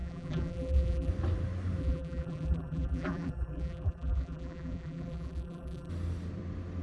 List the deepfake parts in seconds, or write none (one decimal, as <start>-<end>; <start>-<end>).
0.0-1.1; 1.8-5.9